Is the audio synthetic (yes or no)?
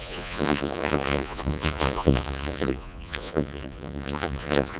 yes